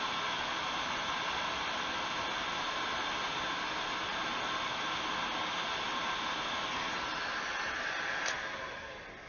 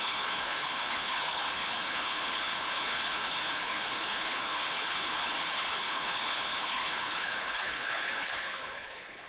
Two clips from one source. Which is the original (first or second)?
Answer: first